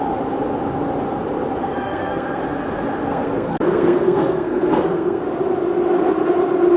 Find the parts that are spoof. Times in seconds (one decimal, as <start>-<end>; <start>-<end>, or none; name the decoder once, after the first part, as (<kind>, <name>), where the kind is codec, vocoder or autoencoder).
1.6-2.4 (codec, SNAC); 3.1-5.2